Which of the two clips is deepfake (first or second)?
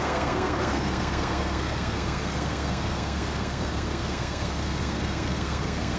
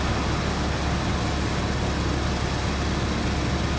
first